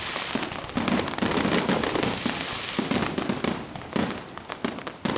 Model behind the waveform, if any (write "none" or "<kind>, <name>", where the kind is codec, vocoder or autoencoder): none